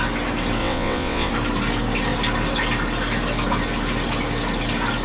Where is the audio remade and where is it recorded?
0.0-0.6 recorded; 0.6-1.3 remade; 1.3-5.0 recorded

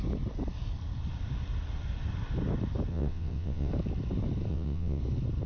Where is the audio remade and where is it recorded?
0.0-2.9 recorded; 2.9-3.7 remade; 3.7-4.5 recorded; 4.5-5.0 remade; 5.0-5.5 recorded

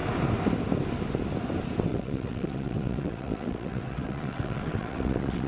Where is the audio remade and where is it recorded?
0.0-1.9 recorded; 1.9-5.5 remade

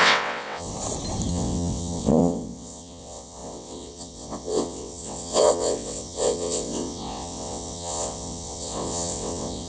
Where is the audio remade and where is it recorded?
0.0-0.7 remade; 0.7-1.3 recorded; 1.3-9.7 remade

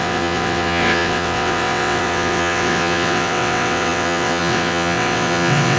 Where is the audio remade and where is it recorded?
0.0-5.8 remade

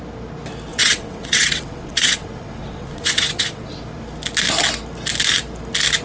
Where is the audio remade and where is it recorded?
0.0-0.7 recorded; 0.7-3.8 remade; 3.8-6.0 recorded

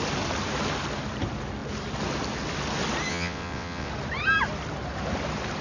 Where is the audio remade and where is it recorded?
0.0-3.1 recorded; 3.1-3.9 remade; 3.9-5.6 recorded

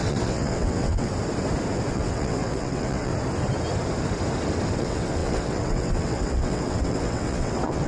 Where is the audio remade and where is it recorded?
0.0-1.1 remade; 1.1-1.9 recorded; 1.9-3.1 remade; 3.1-4.8 recorded; 4.8-7.9 remade